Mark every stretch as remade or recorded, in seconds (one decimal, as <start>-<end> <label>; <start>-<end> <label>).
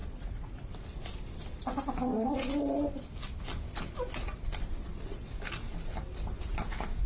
0.0-0.7 remade; 0.7-7.1 recorded